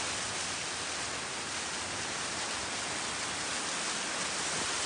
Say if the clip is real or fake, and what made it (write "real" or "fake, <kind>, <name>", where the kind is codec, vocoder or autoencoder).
real